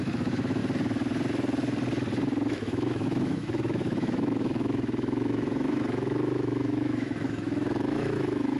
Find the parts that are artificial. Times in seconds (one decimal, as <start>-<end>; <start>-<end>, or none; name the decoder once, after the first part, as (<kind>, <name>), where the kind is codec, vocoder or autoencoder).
0.0-0.6 (autoencoder, DAC-VAE); 2.5-8.6